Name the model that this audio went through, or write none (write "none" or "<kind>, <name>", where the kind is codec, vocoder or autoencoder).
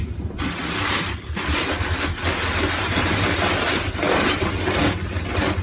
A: none